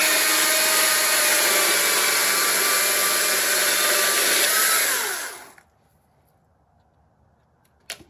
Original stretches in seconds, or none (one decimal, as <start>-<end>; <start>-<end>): 0.0-8.1